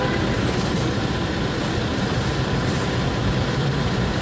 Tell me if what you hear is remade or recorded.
recorded